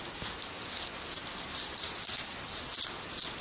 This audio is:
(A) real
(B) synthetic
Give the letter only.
A